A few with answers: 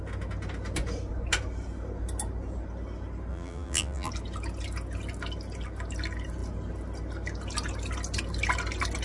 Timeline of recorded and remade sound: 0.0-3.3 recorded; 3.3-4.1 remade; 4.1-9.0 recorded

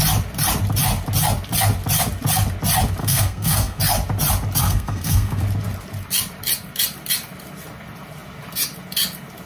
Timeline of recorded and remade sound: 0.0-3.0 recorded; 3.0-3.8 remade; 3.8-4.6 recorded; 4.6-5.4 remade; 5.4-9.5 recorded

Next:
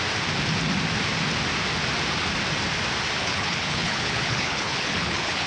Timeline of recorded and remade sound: 0.0-3.2 recorded; 3.2-5.5 remade

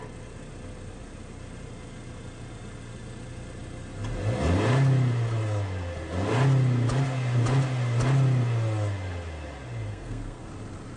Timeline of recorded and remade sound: 0.0-9.9 recorded; 9.9-10.5 remade; 10.5-11.0 recorded